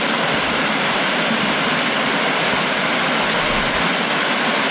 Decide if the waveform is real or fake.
real